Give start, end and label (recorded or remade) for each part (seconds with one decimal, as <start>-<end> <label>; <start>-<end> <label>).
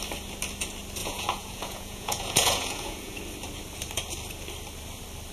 0.0-1.0 recorded; 1.0-3.2 remade; 3.2-5.3 recorded